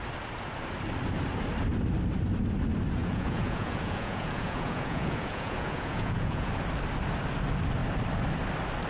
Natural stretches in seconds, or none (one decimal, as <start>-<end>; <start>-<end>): 0.0-3.0; 6.5-8.9